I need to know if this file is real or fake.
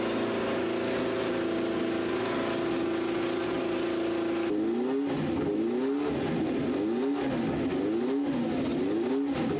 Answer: real